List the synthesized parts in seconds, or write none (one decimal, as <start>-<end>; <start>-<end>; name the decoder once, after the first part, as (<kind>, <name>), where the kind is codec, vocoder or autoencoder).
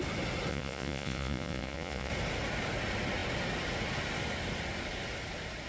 0.5-2.1 (vocoder, Vocos)